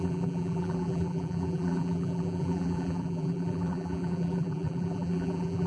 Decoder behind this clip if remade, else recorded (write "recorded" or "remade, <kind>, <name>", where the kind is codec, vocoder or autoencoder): remade, vocoder, BigVGAN v2